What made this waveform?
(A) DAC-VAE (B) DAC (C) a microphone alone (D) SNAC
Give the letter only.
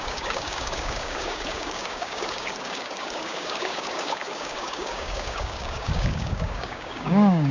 B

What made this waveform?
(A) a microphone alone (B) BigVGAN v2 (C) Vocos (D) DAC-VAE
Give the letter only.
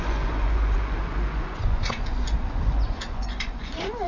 C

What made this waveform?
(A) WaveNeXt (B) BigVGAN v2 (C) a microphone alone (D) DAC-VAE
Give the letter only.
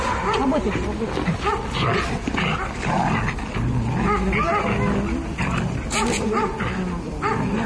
C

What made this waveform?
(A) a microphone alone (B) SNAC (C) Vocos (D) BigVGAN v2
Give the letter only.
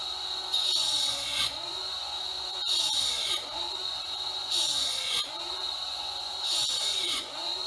C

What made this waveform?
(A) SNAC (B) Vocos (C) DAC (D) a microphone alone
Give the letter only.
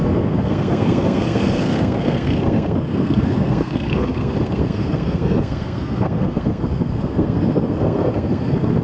A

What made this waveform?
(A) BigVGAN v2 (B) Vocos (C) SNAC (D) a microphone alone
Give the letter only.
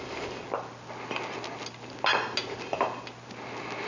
D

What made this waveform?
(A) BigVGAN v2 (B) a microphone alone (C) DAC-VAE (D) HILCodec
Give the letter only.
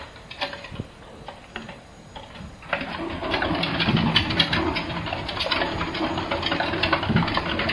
B